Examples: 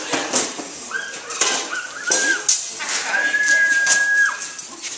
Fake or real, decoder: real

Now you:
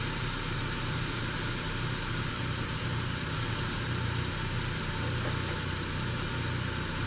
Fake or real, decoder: fake, vocoder, BigVGAN v2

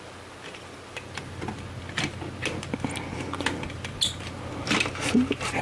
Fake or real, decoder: real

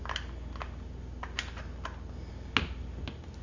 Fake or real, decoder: real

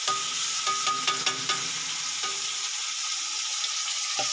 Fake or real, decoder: real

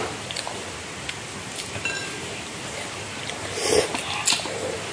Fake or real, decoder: real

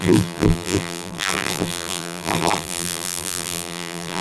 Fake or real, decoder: fake, vocoder, BigVGAN v2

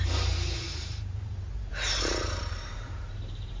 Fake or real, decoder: fake, vocoder, BigVGAN v2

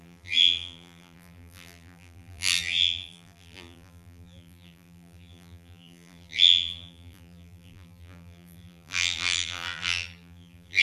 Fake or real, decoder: fake, vocoder, BigVGAN v2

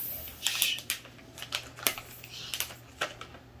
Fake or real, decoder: real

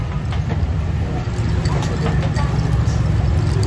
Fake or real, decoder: real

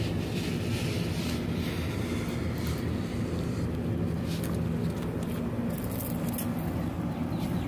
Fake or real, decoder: real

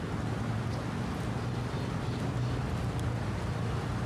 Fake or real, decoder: real